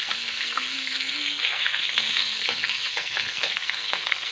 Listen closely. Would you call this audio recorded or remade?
remade